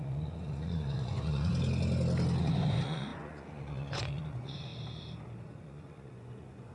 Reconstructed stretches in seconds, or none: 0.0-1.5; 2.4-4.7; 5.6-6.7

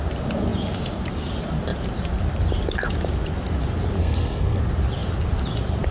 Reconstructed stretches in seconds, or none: 4.0-4.6

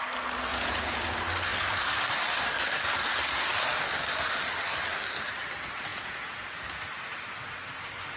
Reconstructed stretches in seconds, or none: 0.5-1.0; 5.9-6.6

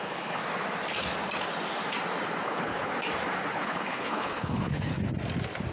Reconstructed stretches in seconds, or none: 0.0-0.4; 2.4-2.9; 3.5-4.9

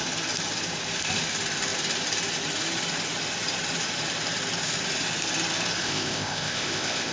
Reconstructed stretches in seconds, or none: 5.8-7.1

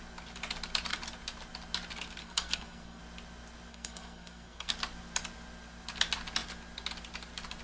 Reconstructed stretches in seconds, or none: 2.2-3.0; 3.7-4.7